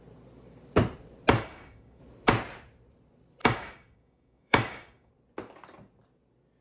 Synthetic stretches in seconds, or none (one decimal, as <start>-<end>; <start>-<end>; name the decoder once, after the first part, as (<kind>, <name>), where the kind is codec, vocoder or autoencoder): 1.4-2.0 (codec, DAC); 3.4-5.1